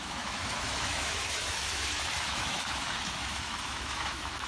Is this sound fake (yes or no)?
yes